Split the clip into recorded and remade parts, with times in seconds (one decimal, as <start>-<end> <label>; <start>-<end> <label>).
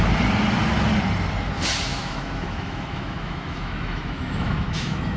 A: 0.0-1.9 recorded; 1.9-5.2 remade